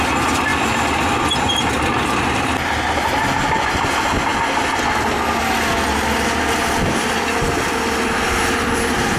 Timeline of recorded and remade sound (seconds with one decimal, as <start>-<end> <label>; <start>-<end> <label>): 0.0-9.2 recorded